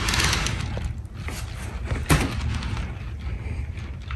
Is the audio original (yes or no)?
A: yes